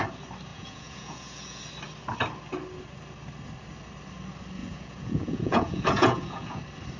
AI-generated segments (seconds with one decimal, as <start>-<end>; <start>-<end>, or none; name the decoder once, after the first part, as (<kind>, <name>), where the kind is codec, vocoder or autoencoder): 0.5-1.6 (vocoder, Vocos); 4.6-6.6